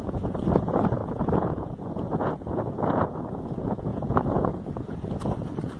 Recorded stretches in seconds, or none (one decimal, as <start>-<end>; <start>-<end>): none